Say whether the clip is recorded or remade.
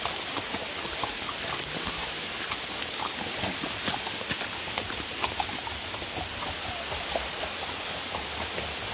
recorded